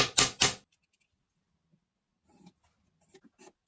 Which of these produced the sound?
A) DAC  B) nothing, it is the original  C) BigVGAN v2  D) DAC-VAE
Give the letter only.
B